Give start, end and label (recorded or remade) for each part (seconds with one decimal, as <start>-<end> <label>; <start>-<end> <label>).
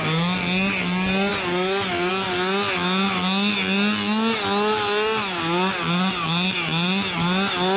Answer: 0.0-7.8 recorded